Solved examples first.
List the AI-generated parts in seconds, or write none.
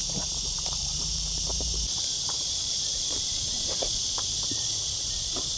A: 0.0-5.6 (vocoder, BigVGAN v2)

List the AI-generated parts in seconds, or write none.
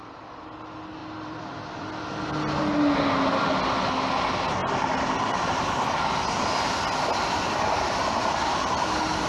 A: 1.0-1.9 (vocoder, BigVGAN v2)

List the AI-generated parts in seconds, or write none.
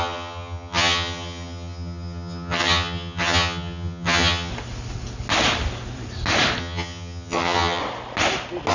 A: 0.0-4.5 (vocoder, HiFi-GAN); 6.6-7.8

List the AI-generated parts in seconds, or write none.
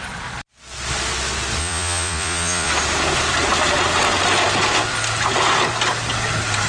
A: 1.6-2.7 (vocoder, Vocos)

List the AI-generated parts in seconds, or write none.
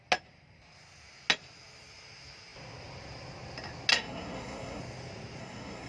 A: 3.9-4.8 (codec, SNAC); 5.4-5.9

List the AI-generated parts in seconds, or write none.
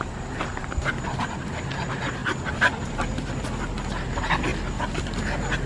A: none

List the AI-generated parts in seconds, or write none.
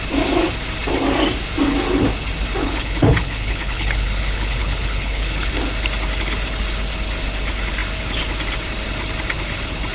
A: 2.6-5.5 (codec, HILCodec)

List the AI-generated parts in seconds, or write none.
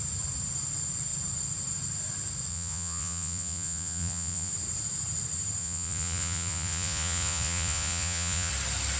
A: 2.5-4.5 (vocoder, Vocos); 5.6-8.5